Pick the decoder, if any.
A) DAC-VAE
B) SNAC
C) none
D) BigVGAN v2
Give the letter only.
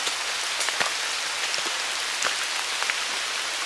C